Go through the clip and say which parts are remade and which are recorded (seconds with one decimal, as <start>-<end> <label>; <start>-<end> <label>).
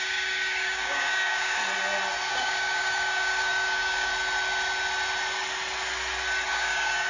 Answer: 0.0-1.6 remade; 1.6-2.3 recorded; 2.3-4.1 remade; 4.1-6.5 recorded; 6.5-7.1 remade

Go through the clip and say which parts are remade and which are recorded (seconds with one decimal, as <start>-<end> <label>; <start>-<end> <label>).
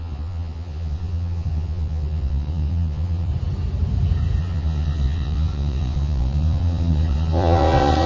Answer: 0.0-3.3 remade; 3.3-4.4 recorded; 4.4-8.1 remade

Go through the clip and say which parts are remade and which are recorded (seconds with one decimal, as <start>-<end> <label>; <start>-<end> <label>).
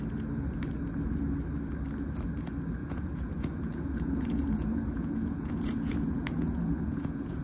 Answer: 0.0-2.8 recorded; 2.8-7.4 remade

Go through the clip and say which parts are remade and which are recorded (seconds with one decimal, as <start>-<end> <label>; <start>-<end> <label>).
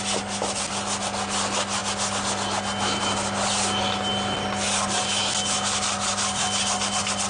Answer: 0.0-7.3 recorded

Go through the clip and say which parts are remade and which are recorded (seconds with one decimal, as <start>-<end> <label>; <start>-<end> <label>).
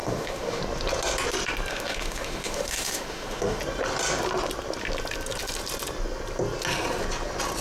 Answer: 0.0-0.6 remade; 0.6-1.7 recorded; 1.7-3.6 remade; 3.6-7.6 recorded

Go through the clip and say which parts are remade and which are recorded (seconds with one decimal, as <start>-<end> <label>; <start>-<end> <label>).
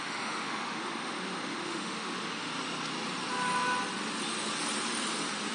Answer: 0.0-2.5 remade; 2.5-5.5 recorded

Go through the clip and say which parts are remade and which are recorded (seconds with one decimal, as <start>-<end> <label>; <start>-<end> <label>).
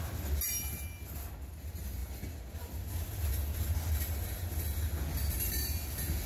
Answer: 0.0-6.3 recorded